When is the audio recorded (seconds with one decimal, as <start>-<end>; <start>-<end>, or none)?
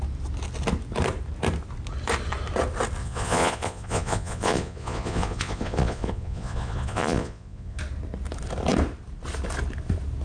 0.0-3.0; 7.8-10.2